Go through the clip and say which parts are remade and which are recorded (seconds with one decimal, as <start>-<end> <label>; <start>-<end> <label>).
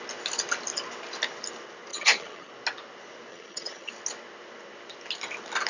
0.0-1.9 recorded; 1.9-2.5 remade; 2.5-3.3 recorded; 3.3-3.9 remade; 3.9-5.7 recorded